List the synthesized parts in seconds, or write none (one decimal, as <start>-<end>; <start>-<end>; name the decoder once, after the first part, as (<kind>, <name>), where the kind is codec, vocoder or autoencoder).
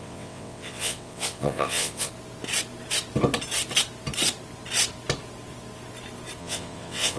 0.0-2.1 (vocoder, WaveNeXt); 6.4-7.2